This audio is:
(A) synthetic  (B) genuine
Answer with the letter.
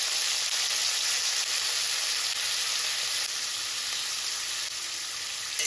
B